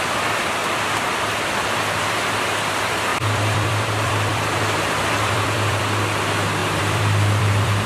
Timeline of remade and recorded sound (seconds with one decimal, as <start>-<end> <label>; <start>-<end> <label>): 0.0-0.6 recorded; 0.6-1.8 remade; 1.8-3.1 recorded; 3.1-5.8 remade; 5.8-6.6 recorded; 6.6-7.9 remade

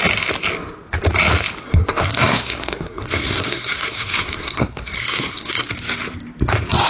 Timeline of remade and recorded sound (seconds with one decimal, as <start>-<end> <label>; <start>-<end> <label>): 0.0-1.6 recorded; 1.6-5.7 remade; 5.7-6.9 recorded

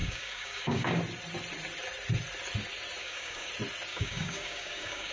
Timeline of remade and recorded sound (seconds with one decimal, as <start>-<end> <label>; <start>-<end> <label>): 0.0-1.0 remade; 1.0-3.0 recorded; 3.0-3.5 remade; 3.5-3.9 recorded; 3.9-5.1 remade

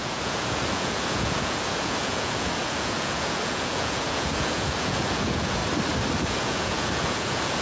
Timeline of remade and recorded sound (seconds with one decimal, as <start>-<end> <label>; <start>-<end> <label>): 0.0-5.6 remade; 5.6-6.2 recorded; 6.2-7.6 remade

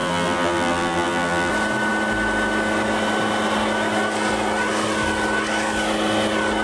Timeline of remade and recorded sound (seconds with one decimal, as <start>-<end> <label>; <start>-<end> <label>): 0.0-1.5 remade; 1.5-6.6 recorded

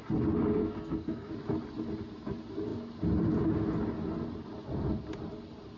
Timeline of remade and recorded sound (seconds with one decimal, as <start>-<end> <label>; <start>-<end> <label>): 0.0-0.6 recorded; 0.6-1.3 remade; 1.3-5.8 recorded

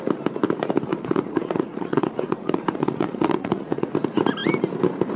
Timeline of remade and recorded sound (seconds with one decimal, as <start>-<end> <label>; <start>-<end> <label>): 0.0-0.9 recorded; 0.9-3.9 remade; 3.9-5.2 recorded